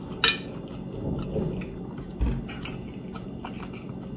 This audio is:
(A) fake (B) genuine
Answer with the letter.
B